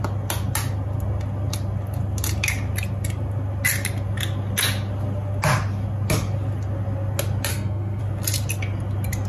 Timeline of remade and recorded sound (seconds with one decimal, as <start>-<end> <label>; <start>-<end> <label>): 0.0-7.5 recorded; 7.5-8.0 remade; 8.0-9.3 recorded